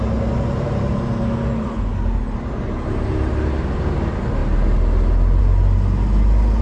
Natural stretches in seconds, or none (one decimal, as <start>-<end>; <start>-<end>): 0.0-6.6